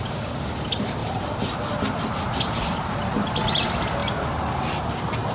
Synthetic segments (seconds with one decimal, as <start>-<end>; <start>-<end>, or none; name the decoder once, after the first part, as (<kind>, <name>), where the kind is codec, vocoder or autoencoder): none